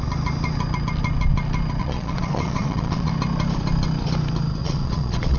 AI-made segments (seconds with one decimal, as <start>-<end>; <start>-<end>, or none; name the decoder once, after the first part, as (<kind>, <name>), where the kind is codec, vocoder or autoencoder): 1.8-3.1 (vocoder, Vocos); 4.6-5.4